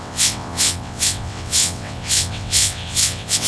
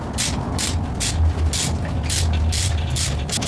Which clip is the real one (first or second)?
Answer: second